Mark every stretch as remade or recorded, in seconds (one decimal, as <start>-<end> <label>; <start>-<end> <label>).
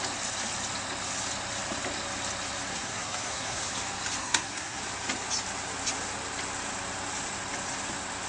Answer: 0.0-2.7 recorded; 2.7-3.7 remade; 3.7-4.2 recorded; 4.2-4.8 remade; 4.8-8.3 recorded